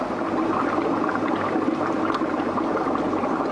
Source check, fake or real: real